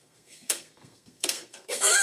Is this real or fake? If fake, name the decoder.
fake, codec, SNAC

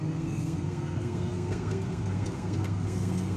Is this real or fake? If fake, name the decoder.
fake, codec, SNAC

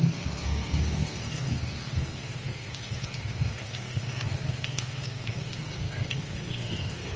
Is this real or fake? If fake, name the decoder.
fake, codec, SNAC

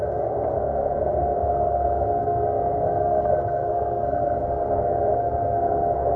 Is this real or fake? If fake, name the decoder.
fake, codec, SNAC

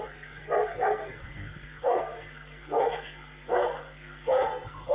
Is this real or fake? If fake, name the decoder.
fake, codec, SNAC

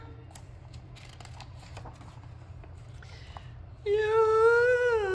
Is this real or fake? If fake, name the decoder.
real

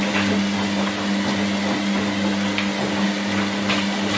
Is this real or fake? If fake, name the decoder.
real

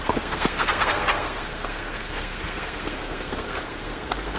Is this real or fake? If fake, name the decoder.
fake, codec, SNAC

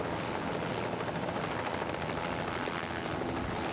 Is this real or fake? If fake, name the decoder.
real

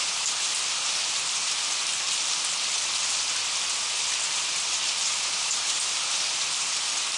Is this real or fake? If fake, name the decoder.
real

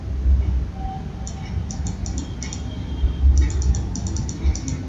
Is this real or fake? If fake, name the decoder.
real